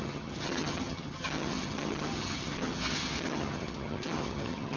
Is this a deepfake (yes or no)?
yes